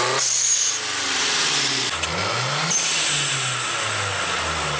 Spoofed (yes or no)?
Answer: no